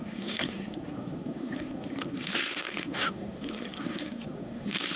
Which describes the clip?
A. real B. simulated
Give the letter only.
B